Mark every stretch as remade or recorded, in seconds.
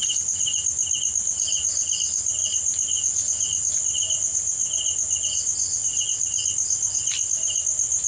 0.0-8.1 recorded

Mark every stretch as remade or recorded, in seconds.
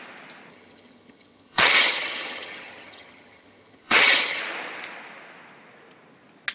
0.0-0.5 recorded; 0.5-4.4 remade; 4.4-6.5 recorded